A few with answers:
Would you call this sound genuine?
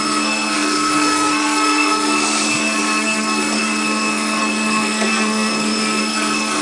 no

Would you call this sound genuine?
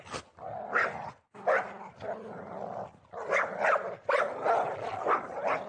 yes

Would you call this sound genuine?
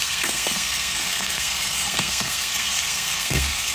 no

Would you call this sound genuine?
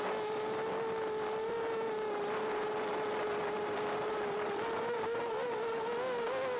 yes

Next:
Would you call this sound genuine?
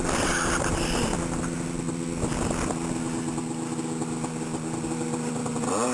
yes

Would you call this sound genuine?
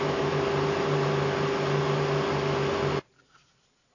yes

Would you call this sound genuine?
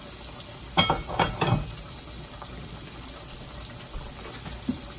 yes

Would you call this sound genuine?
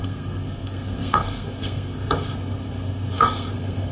no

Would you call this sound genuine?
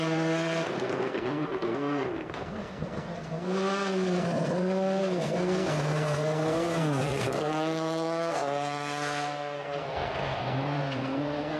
no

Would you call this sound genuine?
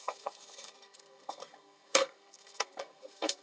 no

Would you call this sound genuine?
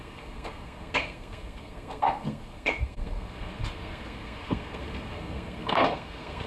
no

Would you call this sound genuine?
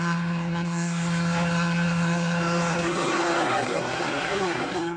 no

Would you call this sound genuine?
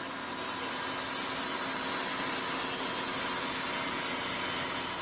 yes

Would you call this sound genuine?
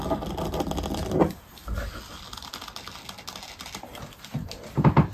yes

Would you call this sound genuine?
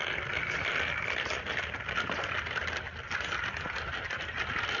yes